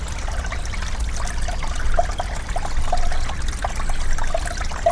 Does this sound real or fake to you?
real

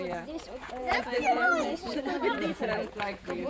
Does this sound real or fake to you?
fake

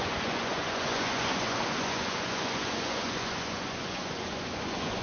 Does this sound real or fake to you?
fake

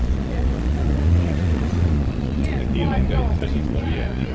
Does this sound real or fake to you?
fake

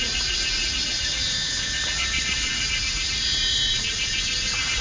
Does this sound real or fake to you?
fake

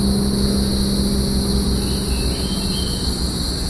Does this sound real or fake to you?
real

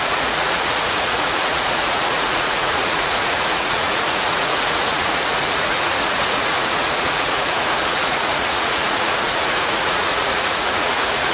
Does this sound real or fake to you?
fake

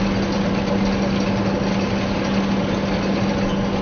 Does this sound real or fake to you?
real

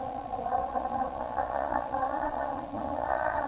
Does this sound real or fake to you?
fake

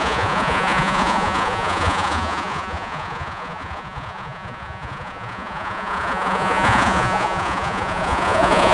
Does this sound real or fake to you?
fake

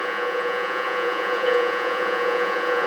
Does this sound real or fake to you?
fake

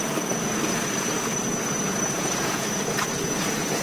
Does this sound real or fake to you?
fake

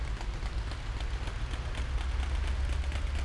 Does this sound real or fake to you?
real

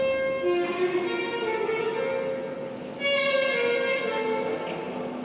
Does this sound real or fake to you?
real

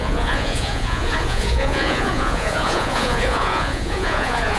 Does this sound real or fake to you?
fake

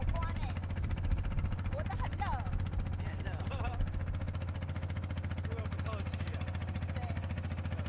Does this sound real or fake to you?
real